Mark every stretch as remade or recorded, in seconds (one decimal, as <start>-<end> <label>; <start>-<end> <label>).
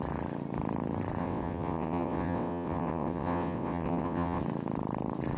0.0-1.2 recorded; 1.2-4.4 remade; 4.4-5.4 recorded